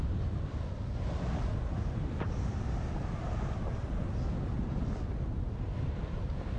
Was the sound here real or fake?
real